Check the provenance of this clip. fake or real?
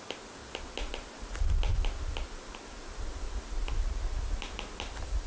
real